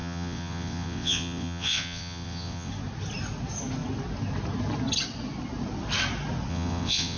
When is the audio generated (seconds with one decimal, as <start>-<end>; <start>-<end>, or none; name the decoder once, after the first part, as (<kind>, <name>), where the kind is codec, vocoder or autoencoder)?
0.0-2.7 (vocoder, WaveNeXt); 6.5-7.2